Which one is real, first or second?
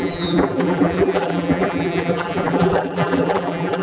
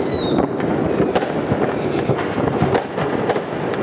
second